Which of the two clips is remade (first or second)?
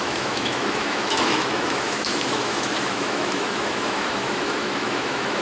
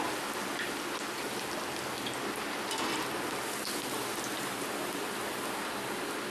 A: first